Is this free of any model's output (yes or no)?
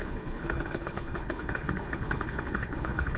no